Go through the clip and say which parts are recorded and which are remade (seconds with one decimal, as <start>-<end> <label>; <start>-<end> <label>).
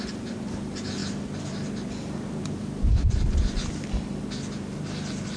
0.0-1.0 recorded; 1.0-4.2 remade; 4.2-5.4 recorded